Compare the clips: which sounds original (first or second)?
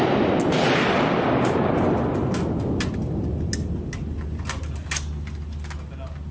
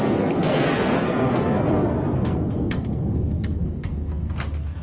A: first